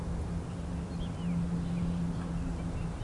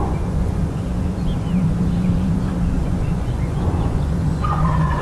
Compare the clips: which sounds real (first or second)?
first